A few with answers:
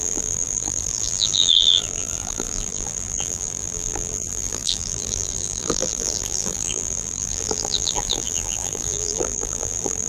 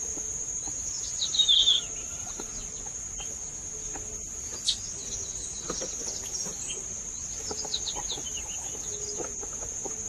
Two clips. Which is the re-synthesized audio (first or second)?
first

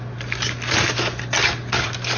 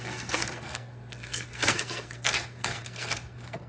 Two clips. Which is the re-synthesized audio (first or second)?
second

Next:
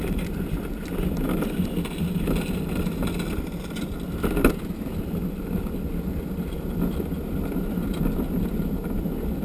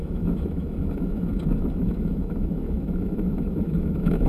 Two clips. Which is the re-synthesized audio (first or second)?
second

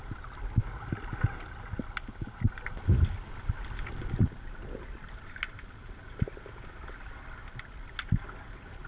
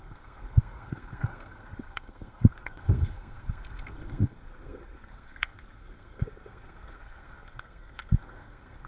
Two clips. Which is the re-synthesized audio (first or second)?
second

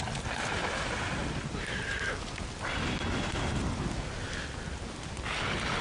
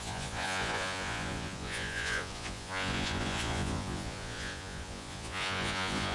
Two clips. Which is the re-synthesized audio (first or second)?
second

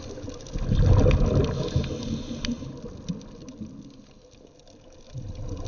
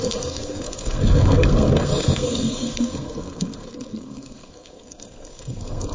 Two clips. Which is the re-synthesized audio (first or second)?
second